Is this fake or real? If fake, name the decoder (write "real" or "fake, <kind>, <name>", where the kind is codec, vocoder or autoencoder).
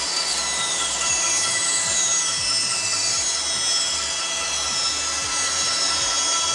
real